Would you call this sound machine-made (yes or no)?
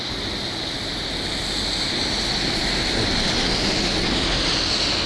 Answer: no